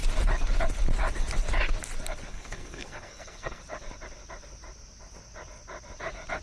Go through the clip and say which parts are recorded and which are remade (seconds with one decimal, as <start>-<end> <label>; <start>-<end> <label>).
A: 0.0-2.3 recorded; 2.3-3.6 remade; 3.6-6.4 recorded